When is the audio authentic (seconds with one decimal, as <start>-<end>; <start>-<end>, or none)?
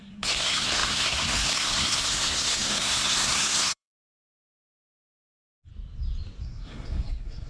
5.7-6.4